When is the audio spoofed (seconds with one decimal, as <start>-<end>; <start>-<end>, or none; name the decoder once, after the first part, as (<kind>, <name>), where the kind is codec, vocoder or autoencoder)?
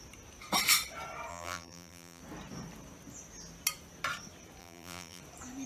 1.3-2.2 (vocoder, BigVGAN v2); 4.6-5.2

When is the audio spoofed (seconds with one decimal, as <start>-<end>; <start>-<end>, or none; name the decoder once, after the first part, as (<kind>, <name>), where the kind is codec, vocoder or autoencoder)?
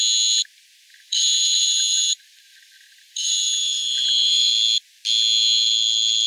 0.9-4.5 (vocoder, BigVGAN v2)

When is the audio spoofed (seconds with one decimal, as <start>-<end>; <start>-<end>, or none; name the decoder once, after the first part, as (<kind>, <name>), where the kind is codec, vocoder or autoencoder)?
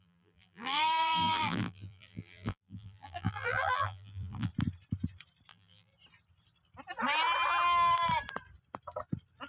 0.0-4.5 (vocoder, BigVGAN v2); 5.5-5.9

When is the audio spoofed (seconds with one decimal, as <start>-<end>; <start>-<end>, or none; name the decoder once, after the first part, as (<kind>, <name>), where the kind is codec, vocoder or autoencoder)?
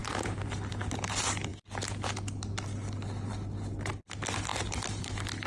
0.0-0.7 (vocoder, BigVGAN v2); 4.5-5.5